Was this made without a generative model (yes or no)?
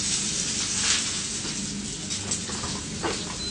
yes